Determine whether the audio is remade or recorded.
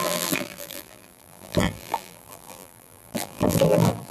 remade